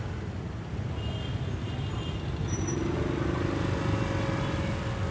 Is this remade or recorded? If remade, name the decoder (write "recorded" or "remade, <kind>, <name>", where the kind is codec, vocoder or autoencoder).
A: recorded